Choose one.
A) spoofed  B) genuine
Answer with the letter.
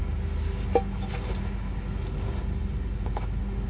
B